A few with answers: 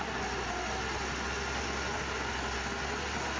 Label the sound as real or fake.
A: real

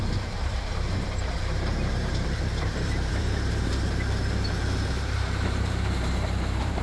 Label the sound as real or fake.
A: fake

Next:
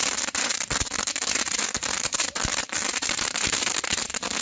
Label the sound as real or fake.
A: fake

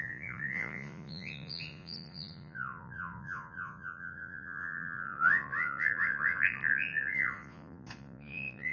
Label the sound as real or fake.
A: fake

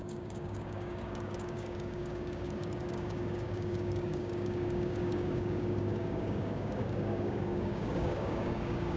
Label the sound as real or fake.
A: fake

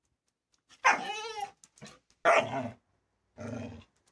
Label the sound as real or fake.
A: real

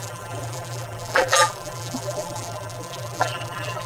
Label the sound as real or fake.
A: fake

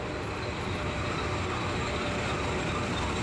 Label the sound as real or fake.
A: real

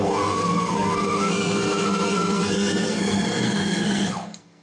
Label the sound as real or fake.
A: fake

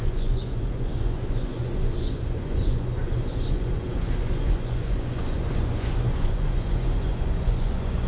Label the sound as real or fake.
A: fake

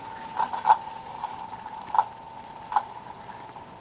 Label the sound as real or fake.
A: real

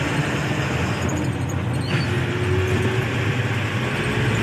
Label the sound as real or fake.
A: real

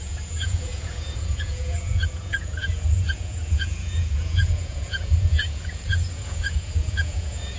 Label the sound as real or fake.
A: fake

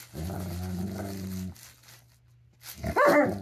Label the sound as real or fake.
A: real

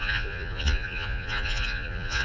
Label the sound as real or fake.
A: fake